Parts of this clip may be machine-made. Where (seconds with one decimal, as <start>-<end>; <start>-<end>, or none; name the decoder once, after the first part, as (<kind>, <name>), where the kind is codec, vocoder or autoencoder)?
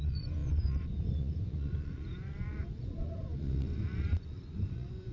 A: 0.0-5.1 (vocoder, Vocos)